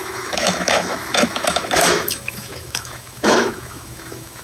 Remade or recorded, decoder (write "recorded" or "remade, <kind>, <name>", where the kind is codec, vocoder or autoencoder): remade, autoencoder, DAC-VAE